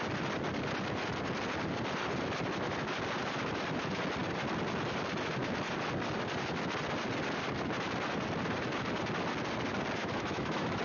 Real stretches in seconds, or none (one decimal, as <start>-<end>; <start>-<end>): 0.0-10.0